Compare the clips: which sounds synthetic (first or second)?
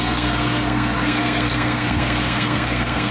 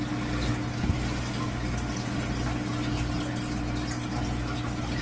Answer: first